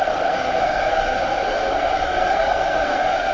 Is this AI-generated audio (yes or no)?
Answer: yes